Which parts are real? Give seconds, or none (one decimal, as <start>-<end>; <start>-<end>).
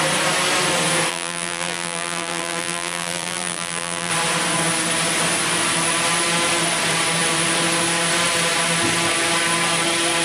0.0-1.1; 4.1-10.2